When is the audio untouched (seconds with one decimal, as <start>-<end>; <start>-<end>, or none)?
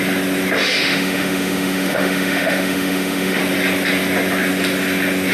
0.0-0.8; 3.4-5.3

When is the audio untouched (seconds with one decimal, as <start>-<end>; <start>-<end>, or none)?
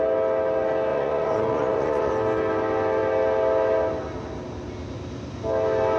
0.0-0.9; 2.1-6.0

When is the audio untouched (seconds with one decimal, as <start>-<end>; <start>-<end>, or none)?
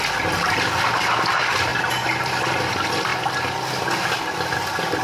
0.0-5.0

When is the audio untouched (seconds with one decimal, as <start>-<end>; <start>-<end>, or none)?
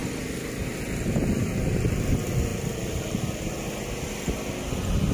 0.6-2.5; 3.3-5.1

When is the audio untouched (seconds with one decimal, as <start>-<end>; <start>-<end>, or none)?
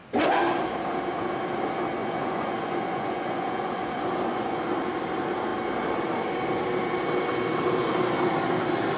0.0-2.0; 4.6-9.0